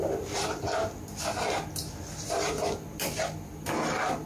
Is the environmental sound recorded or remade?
remade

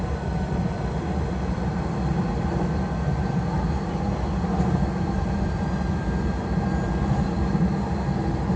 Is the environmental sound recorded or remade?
recorded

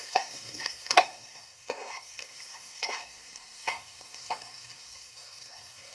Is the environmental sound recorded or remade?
remade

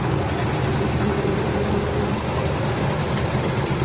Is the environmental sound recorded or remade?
recorded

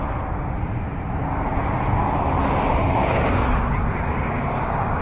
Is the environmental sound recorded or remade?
recorded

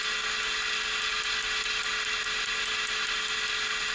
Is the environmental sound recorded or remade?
recorded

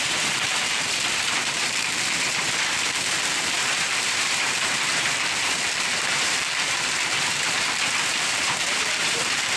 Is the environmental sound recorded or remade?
remade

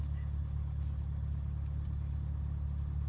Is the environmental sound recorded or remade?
recorded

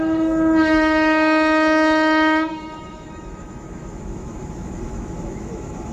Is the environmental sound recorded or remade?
remade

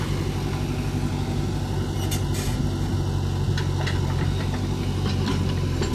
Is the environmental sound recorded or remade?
recorded